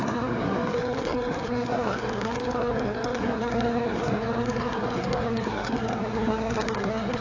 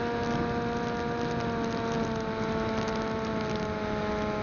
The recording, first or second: second